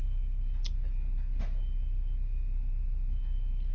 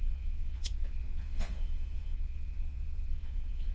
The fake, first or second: second